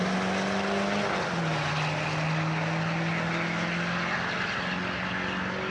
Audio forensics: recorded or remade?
recorded